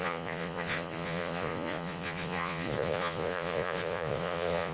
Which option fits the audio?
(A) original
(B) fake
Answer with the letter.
B